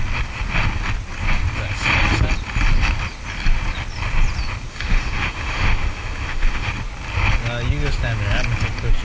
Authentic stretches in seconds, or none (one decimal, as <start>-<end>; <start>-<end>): 0.0-4.7; 6.7-9.0